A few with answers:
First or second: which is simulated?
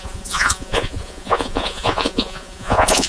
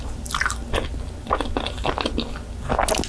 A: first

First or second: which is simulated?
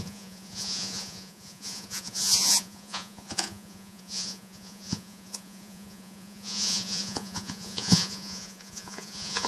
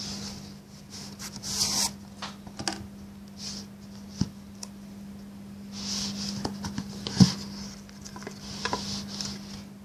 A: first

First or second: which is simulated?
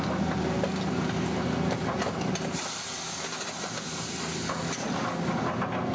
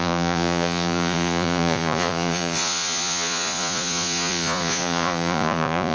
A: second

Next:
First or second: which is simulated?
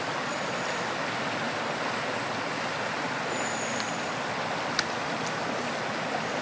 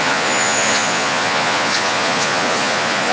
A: second